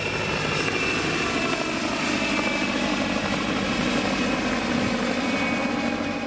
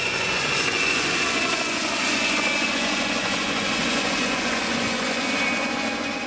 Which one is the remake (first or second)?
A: second